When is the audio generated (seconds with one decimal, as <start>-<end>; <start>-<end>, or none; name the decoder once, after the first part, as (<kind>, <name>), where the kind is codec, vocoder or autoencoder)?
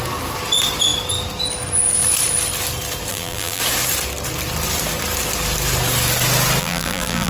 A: 3.1-3.6 (vocoder, BigVGAN v2); 6.6-7.3